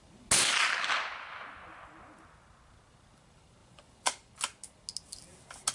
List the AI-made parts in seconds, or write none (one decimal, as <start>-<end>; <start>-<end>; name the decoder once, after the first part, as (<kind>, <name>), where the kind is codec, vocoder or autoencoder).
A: 3.6-4.4 (vocoder, Vocos)